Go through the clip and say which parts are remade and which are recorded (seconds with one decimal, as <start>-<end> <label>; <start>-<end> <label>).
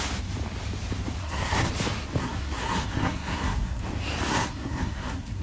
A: 0.0-1.2 recorded; 1.2-1.7 remade; 1.7-2.2 recorded; 2.2-3.8 remade; 3.8-4.3 recorded; 4.3-5.4 remade